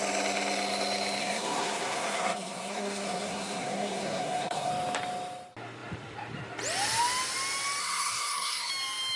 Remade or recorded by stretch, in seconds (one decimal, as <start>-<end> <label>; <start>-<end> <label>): 0.0-1.2 recorded; 1.2-4.7 remade; 4.7-7.8 recorded; 7.8-8.7 remade; 8.7-9.2 recorded